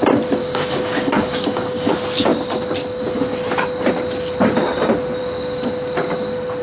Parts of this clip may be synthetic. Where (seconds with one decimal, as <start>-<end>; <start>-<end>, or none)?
0.4-1.9